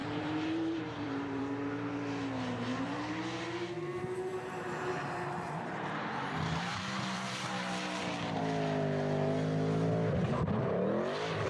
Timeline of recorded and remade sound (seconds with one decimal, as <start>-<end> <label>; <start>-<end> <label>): 0.0-1.4 remade; 1.4-4.3 recorded; 4.3-8.4 remade; 8.4-11.5 recorded